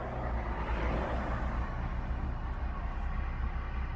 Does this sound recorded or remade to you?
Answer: recorded